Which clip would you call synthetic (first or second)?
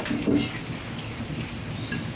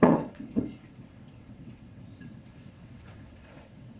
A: second